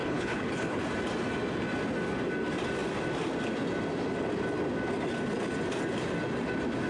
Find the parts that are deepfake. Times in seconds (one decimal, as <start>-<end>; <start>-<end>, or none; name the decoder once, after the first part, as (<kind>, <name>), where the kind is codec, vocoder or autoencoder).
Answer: 0.0-0.8 (codec, HILCodec)